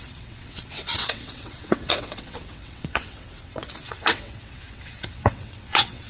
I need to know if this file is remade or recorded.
remade